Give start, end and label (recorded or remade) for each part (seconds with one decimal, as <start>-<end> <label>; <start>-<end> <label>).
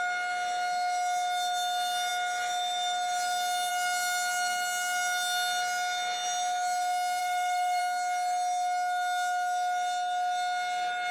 0.0-7.2 recorded; 7.2-7.8 remade; 7.8-11.1 recorded